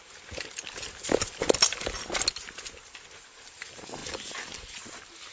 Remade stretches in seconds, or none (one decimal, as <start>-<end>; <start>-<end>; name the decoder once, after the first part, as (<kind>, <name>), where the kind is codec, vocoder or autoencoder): none